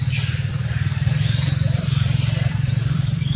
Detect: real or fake fake